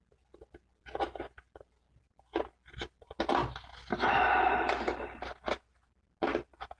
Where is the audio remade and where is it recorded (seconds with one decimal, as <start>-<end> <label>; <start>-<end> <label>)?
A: 0.0-6.8 recorded